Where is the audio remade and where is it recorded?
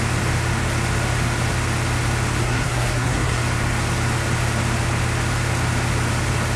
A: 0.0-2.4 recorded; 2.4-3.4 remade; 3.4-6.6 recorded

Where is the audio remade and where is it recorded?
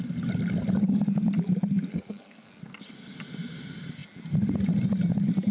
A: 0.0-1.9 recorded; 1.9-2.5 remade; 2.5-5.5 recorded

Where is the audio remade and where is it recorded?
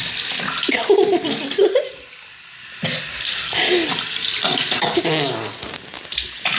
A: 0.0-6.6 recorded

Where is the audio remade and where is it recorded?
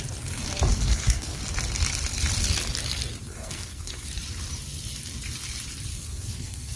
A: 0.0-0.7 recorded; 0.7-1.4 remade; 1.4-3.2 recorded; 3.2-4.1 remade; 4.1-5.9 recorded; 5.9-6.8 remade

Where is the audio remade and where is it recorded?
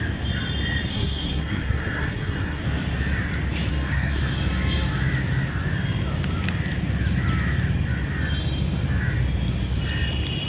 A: 0.0-0.9 recorded; 0.9-2.6 remade; 2.6-3.7 recorded; 3.7-4.2 remade; 4.2-10.5 recorded